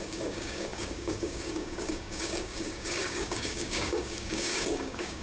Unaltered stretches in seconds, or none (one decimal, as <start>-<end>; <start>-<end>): none